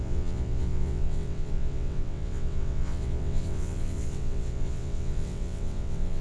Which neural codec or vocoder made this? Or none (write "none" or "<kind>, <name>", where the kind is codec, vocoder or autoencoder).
vocoder, WaveNeXt